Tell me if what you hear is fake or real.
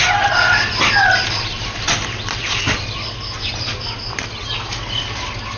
real